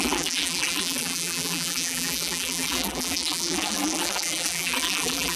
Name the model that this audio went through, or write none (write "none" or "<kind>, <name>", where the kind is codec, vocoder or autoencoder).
vocoder, BigVGAN v2